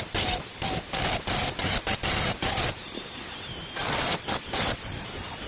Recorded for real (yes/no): yes